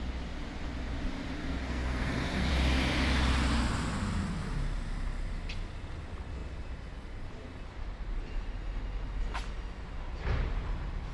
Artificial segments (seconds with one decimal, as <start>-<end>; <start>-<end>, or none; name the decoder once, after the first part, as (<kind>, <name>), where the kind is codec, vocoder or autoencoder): 1.4-2.5 (codec, SNAC)